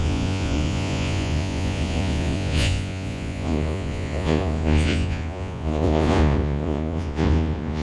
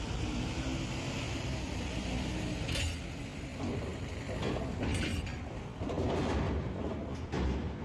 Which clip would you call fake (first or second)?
first